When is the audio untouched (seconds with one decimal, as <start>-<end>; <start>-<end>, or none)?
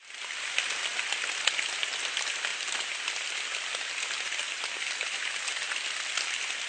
0.0-6.7